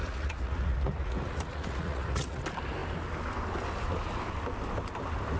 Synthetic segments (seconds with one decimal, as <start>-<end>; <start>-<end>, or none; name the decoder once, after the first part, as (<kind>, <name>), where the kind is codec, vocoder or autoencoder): 0.0-2.4 (vocoder, Vocos)

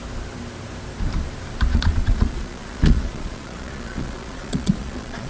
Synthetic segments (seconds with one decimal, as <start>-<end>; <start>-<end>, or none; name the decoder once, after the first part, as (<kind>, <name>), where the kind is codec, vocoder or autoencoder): 1.7-5.3 (vocoder, Vocos)

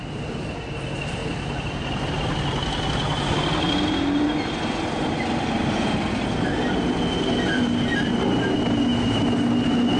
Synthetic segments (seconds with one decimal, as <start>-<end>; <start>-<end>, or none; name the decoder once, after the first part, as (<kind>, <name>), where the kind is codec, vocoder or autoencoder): none

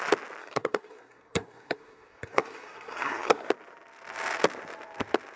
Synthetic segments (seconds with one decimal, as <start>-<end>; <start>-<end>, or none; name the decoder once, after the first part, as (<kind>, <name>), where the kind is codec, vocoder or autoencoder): 0.4-3.5 (codec, SNAC)

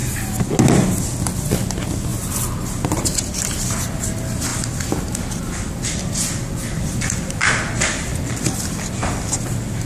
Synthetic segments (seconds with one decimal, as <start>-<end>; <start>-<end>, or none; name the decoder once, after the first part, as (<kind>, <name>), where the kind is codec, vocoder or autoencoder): 1.4-4.5 (vocoder, BigVGAN v2); 5.4-8.1; 8.7-9.9

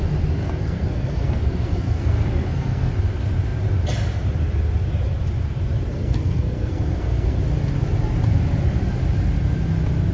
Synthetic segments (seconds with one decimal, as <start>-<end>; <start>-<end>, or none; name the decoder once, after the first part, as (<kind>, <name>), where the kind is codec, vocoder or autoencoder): 0.4-2.9 (codec, SNAC); 5.9-7.4